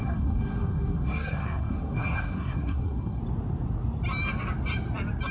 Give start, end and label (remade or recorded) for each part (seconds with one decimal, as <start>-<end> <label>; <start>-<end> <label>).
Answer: 0.0-3.2 remade; 3.2-5.3 recorded